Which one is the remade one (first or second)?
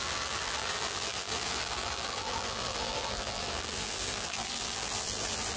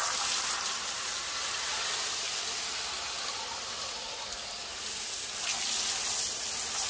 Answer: first